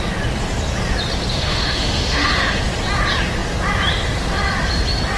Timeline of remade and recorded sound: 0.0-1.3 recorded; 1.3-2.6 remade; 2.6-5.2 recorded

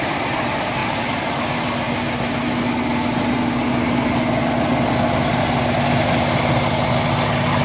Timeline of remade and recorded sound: 0.0-7.6 recorded

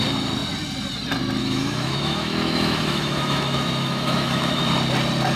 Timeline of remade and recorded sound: 0.0-1.4 recorded; 1.4-4.6 remade; 4.6-5.4 recorded

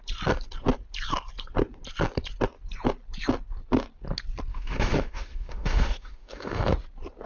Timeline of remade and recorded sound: 0.0-4.5 recorded; 4.5-6.7 remade; 6.7-7.3 recorded

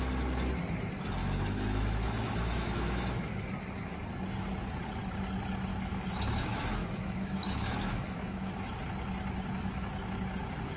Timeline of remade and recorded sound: 0.0-1.2 recorded; 1.2-3.5 remade; 3.5-5.7 recorded; 5.7-8.8 remade; 8.8-10.8 recorded

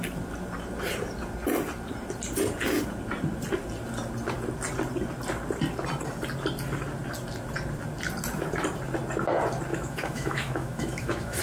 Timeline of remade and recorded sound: 0.0-9.7 recorded; 9.7-11.4 remade